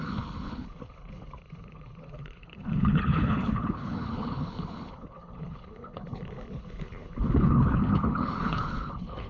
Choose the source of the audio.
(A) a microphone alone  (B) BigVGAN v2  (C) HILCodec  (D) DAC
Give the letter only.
C